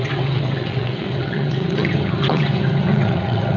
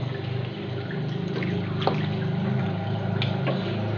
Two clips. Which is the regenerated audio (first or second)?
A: first